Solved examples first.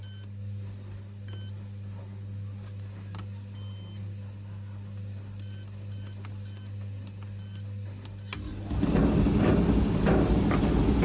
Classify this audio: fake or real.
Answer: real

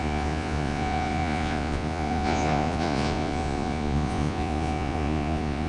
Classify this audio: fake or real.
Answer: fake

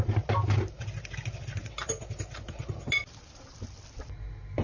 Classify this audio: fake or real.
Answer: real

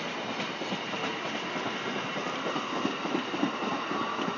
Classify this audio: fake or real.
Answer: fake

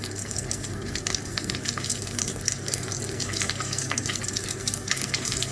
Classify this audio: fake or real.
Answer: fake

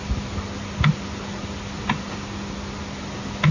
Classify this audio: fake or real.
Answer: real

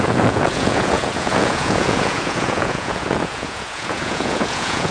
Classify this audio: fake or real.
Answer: fake